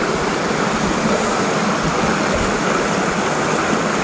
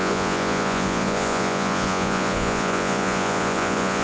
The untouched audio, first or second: first